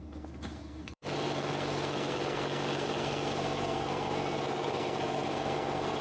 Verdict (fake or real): fake